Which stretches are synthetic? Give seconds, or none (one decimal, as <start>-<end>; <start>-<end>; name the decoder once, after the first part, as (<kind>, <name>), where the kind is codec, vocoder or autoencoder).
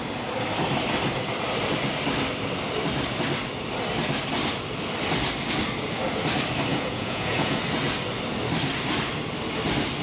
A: 6.7-7.6 (vocoder, Vocos)